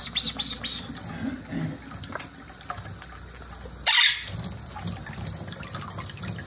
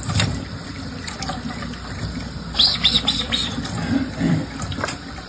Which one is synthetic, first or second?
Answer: second